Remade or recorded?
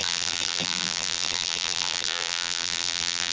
remade